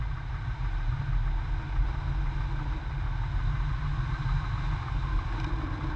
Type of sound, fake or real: real